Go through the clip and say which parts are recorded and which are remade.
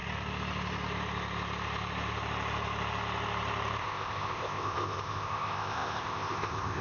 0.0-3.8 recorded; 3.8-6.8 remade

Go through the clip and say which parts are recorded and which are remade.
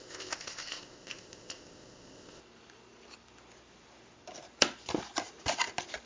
0.0-2.4 remade; 2.4-6.1 recorded